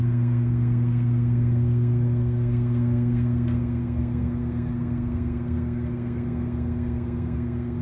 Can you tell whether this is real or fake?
fake